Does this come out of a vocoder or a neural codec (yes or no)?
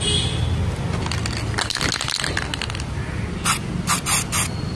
no